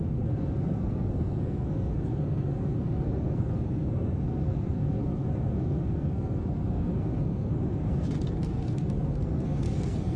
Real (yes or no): no